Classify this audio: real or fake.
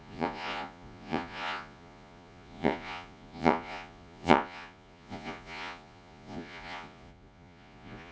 fake